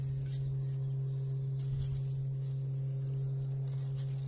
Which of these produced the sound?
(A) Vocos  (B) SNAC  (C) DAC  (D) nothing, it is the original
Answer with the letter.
D